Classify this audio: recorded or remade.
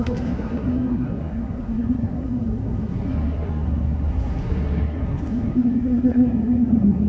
remade